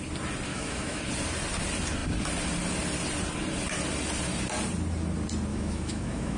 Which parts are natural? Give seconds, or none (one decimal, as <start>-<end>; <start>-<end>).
0.0-0.5; 1.0-5.5